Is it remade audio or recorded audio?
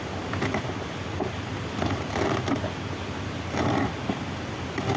recorded